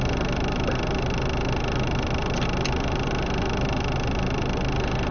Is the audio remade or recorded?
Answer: recorded